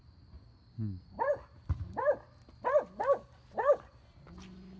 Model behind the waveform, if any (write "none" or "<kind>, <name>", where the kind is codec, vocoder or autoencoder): none